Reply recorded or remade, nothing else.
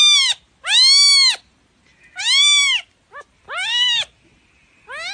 recorded